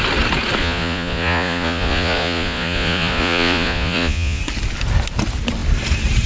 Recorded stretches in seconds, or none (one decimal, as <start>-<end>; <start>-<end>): 0.0-0.6; 4.4-6.3